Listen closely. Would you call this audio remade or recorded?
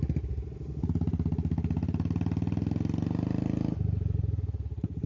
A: recorded